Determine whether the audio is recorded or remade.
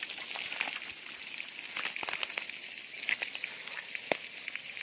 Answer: recorded